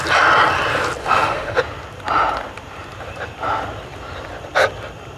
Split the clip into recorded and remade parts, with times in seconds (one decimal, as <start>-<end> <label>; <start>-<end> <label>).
0.0-1.0 recorded; 1.0-1.6 remade; 1.6-5.2 recorded